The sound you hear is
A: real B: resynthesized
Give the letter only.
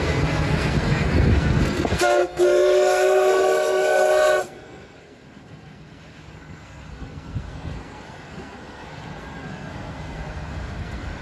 B